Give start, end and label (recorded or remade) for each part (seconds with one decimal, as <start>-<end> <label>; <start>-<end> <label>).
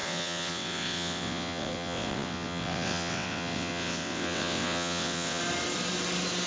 0.0-5.4 remade; 5.4-6.5 recorded